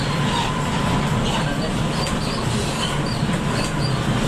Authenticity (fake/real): real